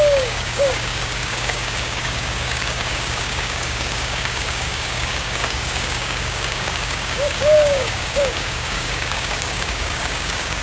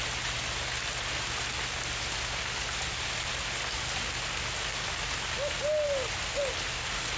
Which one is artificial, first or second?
first